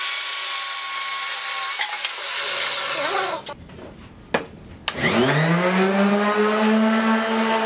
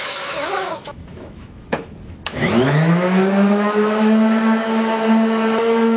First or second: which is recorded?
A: first